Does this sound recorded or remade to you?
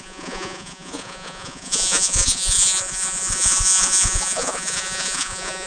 remade